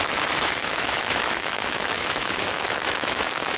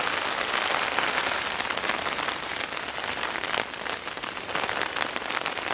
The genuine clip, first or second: second